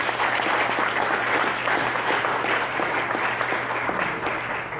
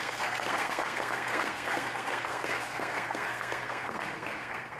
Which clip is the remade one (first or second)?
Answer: second